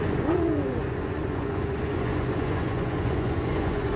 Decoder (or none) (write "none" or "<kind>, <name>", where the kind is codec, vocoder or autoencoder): vocoder, Vocos